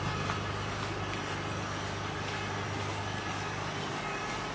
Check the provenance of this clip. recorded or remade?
recorded